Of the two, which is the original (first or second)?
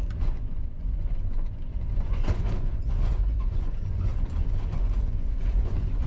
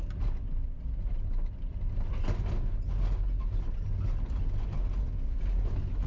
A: second